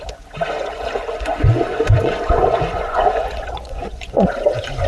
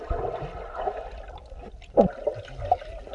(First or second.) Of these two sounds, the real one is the second